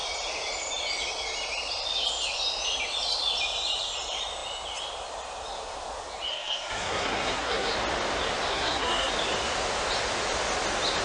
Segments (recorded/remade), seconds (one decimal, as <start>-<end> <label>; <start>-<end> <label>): 0.0-6.3 recorded; 6.3-7.7 remade; 7.7-8.5 recorded; 8.5-9.1 remade; 9.1-11.0 recorded